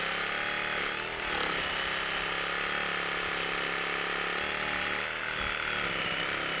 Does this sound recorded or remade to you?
recorded